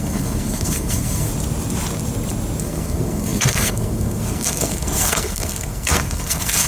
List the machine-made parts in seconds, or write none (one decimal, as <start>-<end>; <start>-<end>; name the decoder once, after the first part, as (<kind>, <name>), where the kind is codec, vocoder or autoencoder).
0.0-1.3 (codec, SNAC); 2.6-6.7